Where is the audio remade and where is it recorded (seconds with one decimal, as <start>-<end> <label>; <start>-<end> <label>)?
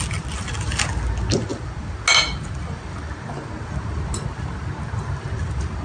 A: 0.0-5.8 recorded